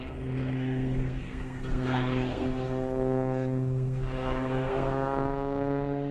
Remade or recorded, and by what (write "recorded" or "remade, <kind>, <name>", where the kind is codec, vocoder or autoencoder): remade, codec, SNAC